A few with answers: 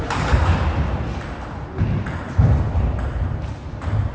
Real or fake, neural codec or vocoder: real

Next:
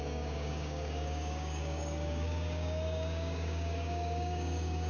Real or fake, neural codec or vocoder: fake, codec, DAC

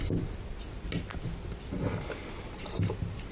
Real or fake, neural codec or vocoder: real